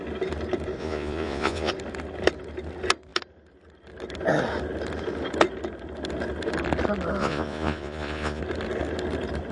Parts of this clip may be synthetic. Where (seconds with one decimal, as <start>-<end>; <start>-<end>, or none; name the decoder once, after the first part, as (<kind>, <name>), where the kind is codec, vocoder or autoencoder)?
0.8-1.7 (vocoder, Vocos); 7.2-8.4